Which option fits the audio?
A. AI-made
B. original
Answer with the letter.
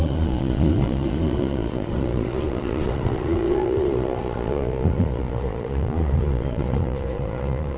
A